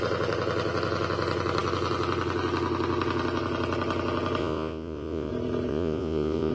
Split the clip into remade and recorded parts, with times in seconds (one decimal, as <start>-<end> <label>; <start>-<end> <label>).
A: 0.0-4.4 recorded; 4.4-5.3 remade; 5.3-5.7 recorded; 5.7-6.5 remade